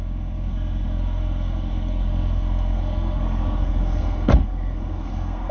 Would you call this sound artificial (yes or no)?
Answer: yes